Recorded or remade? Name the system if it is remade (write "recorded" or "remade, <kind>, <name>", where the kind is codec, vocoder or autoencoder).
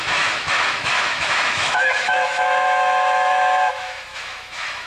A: remade, autoencoder, DAC-VAE